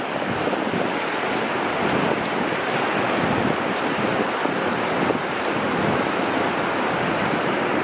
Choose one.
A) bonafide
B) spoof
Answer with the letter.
A